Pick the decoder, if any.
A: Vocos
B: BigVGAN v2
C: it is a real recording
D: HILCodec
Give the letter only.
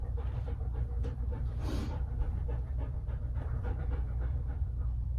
B